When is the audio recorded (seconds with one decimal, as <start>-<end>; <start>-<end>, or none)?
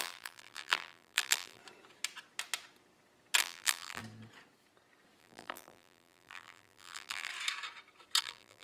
1.6-3.4; 4.0-5.2; 7.3-8.2